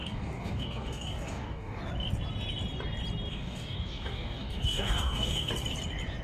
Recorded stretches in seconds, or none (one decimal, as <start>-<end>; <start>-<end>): 1.8-3.3; 5.5-6.2